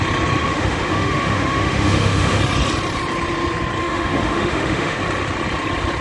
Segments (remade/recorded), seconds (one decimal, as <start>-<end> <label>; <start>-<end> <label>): 0.0-0.4 recorded; 0.4-2.4 remade; 2.4-3.8 recorded; 3.8-5.0 remade; 5.0-6.0 recorded